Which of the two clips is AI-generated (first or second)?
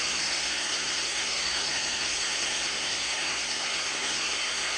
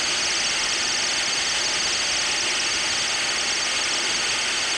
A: first